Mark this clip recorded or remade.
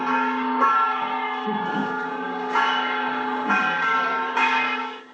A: remade